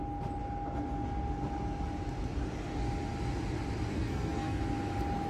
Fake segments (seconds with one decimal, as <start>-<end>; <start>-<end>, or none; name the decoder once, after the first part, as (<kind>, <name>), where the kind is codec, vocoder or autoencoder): 3.9-4.6 (codec, SNAC)

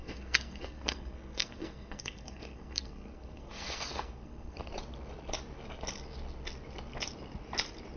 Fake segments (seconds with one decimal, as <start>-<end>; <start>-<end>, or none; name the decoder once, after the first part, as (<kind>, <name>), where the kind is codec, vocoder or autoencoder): 0.0-4.7 (codec, SNAC)

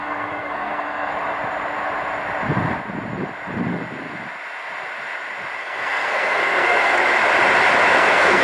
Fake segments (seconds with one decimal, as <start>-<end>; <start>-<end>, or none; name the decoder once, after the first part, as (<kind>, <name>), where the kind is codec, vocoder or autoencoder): 0.0-1.1 (codec, SNAC); 5.6-7.0; 7.9-8.4

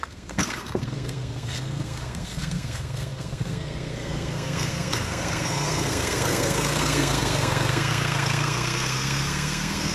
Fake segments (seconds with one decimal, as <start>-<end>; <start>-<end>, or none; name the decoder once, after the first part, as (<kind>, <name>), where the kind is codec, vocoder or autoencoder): 0.0-9.9 (codec, SNAC)

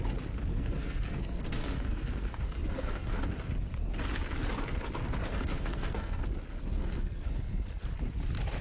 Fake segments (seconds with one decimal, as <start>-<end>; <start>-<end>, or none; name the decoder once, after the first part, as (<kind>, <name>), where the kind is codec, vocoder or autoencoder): 0.5-3.2 (codec, SNAC); 5.2-6.2; 6.8-7.3